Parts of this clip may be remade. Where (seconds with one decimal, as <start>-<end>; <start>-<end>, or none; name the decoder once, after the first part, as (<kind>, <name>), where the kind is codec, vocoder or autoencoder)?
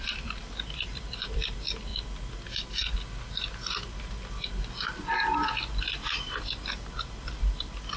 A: 0.0-1.9 (vocoder, BigVGAN v2); 5.8-8.0